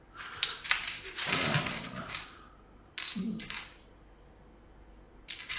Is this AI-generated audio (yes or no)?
no